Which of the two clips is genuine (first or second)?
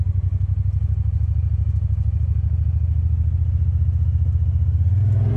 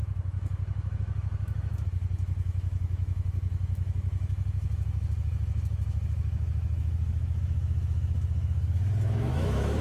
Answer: first